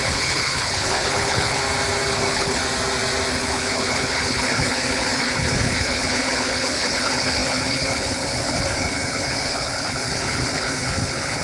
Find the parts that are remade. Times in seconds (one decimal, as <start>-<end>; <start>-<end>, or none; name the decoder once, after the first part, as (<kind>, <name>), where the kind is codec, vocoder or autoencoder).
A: 0.0-1.6 (codec, HILCodec); 2.1-2.6; 3.3-11.4